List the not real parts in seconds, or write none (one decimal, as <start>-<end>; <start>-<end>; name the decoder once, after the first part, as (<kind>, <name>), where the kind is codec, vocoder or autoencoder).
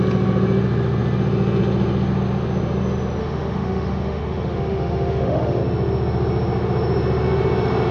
3.2-5.6 (autoencoder, DAC-VAE)